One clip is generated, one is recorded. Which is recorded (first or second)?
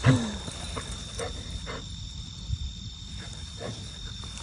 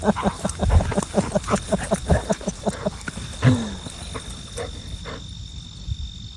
second